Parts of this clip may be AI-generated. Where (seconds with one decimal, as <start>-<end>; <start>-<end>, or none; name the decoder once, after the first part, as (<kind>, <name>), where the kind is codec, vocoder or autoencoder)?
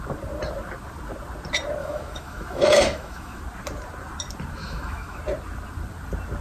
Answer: 1.8-3.4 (autoencoder, DAC-VAE); 4.6-5.2